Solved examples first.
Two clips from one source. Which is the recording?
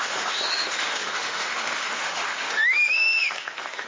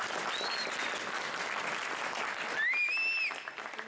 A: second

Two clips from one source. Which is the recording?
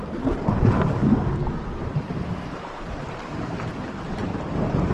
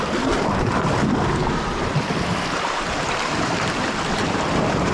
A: first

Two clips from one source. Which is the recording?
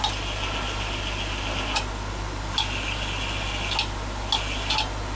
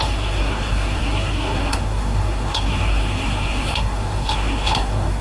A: first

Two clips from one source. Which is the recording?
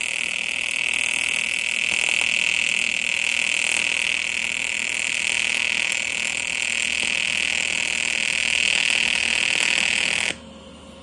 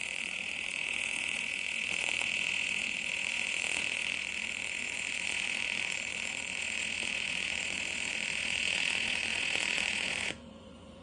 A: first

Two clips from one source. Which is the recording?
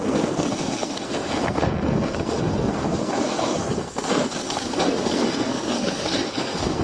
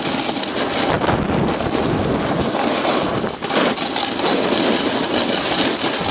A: second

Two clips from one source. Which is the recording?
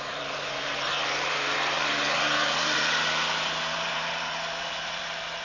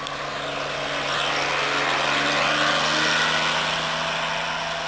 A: second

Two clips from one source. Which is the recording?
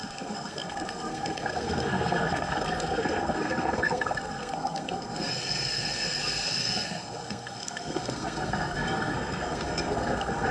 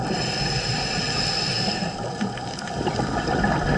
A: second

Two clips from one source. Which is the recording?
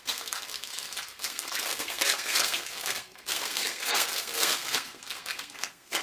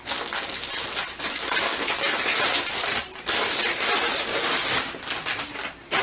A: second